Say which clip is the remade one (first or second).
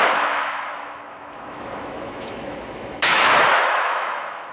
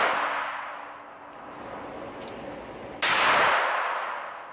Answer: first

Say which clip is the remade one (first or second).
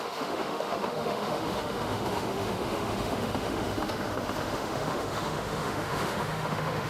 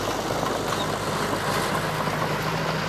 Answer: first